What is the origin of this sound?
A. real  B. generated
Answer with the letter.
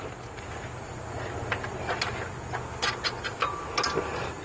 A